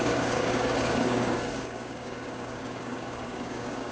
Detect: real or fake fake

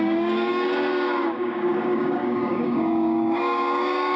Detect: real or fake fake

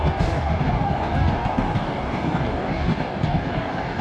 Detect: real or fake fake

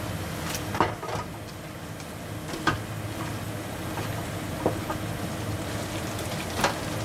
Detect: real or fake real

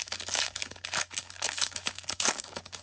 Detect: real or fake fake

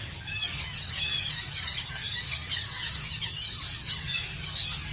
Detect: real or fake fake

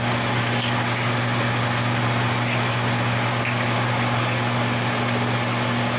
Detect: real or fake real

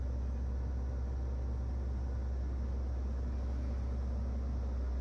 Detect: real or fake real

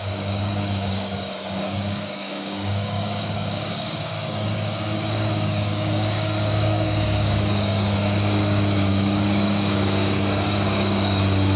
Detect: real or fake fake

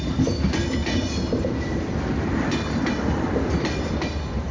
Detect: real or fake real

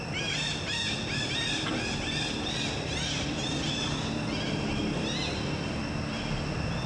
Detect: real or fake real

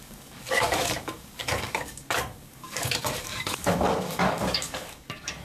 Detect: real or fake fake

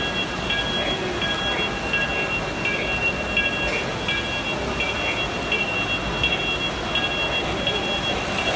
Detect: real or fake real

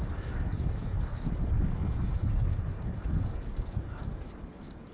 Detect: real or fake fake